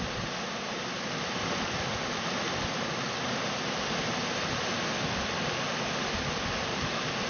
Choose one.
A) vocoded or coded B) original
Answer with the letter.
B